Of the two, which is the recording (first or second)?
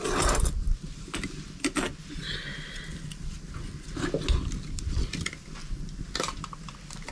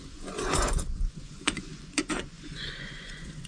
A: first